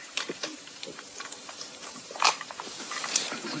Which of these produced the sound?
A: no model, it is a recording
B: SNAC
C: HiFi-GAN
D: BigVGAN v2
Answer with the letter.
D